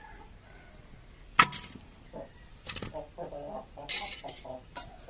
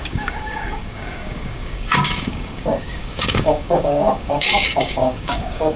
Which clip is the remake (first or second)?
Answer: second